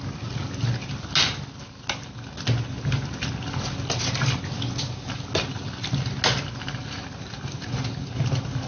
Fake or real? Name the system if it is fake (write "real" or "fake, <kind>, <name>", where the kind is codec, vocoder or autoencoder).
real